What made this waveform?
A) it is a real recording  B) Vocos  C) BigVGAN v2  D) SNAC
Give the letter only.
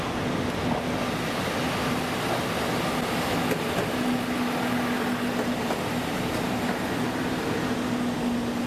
A